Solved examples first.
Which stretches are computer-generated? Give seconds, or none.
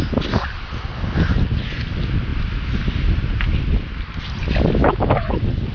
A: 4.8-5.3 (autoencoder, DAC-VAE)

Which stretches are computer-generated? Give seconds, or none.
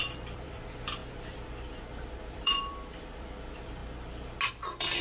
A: 0.0-3.8 (vocoder, BigVGAN v2); 4.5-5.0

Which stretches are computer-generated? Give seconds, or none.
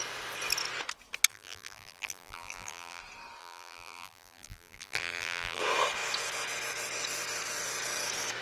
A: 1.3-3.0 (vocoder, BigVGAN v2); 3.4-5.6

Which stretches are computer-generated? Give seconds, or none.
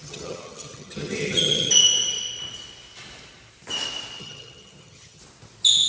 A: 0.0-1.7 (vocoder, HiFi-GAN); 4.2-5.2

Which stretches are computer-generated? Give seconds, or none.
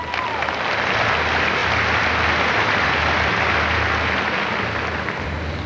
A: none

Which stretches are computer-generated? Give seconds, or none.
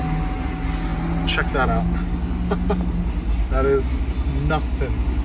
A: none